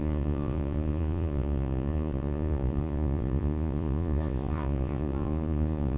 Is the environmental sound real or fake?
fake